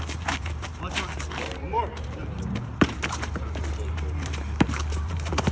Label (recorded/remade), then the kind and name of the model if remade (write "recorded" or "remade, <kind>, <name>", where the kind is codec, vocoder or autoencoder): remade, vocoder, BigVGAN v2